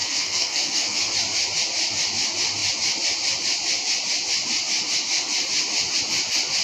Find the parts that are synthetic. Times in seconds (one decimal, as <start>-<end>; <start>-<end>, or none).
0.0-1.1